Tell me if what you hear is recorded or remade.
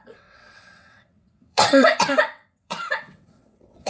remade